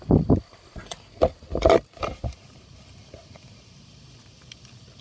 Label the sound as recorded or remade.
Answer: recorded